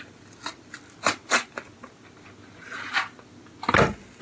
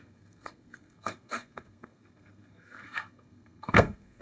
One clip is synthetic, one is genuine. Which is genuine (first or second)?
first